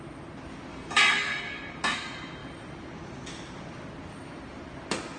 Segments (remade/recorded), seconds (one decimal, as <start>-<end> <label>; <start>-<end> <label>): 0.0-0.7 recorded; 0.7-1.4 remade; 1.4-5.2 recorded